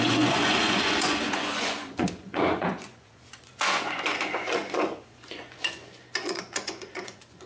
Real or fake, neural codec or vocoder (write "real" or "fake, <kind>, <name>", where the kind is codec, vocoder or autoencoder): fake, vocoder, Vocos